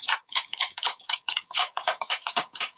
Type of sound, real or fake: fake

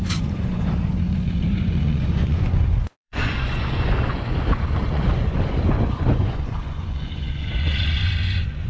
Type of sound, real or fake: fake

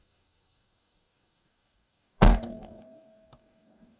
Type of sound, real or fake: fake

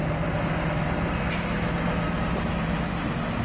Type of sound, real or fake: real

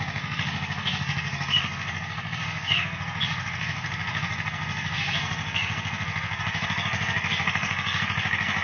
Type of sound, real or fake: fake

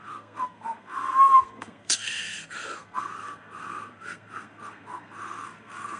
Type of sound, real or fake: fake